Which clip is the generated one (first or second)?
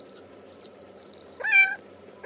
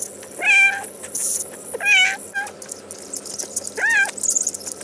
first